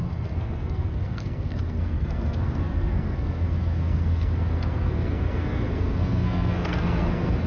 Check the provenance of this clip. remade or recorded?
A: remade